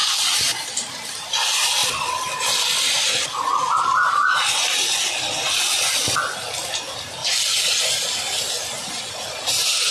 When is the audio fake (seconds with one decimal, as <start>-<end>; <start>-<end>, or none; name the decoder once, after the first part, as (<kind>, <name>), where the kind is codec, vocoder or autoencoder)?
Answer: 0.0-1.3 (vocoder, BigVGAN v2)